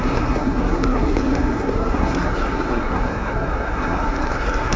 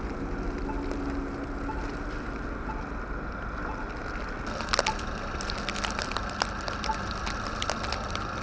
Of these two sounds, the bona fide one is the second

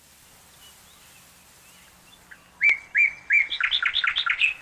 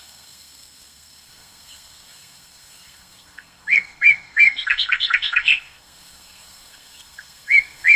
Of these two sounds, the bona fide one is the first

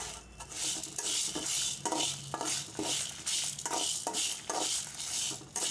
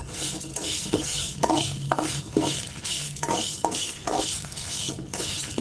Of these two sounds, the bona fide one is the first